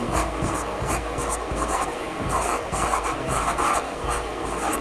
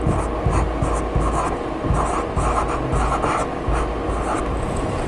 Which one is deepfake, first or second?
first